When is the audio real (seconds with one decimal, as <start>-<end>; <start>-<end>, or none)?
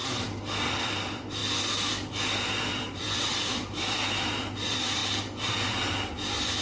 0.0-0.6; 1.4-2.1; 5.0-6.6